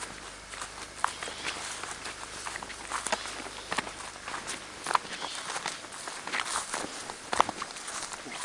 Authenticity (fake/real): real